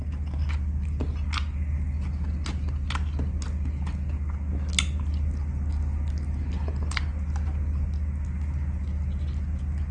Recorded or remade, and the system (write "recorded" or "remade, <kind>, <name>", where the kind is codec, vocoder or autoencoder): recorded